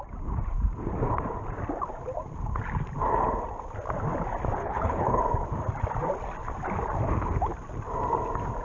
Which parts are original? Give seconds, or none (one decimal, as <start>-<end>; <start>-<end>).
0.0-4.6; 5.2-8.6